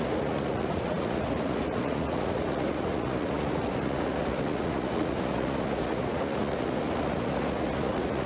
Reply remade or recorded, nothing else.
remade